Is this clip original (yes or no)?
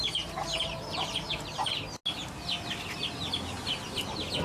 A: yes